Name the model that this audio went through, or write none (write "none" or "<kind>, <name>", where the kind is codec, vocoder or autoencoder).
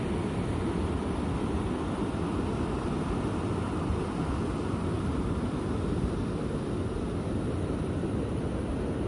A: none